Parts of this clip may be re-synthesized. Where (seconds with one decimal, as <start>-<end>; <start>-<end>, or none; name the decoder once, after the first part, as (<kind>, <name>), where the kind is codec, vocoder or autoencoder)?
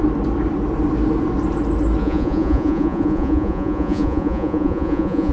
2.0-5.3 (vocoder, Vocos)